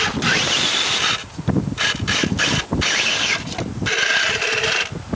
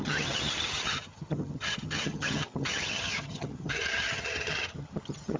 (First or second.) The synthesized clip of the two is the second